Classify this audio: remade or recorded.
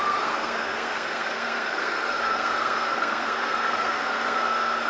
remade